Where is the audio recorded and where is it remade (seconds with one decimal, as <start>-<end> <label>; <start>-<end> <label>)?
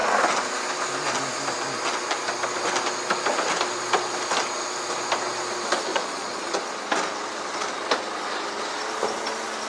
0.0-5.9 recorded; 5.9-6.6 remade; 6.6-9.7 recorded